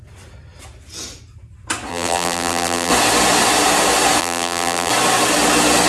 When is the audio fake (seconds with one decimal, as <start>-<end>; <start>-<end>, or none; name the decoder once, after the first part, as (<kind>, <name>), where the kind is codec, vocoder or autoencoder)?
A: 1.9-2.9 (vocoder, BigVGAN v2); 4.2-4.9